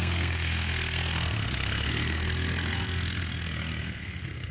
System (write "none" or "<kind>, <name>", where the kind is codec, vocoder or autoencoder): codec, SNAC